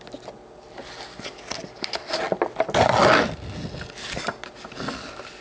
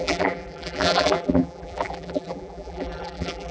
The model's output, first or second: second